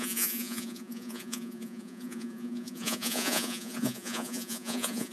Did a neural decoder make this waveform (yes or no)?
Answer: yes